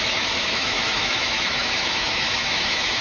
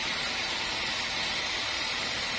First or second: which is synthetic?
first